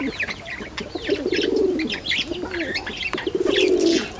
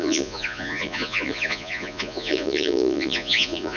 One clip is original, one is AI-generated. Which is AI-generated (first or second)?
second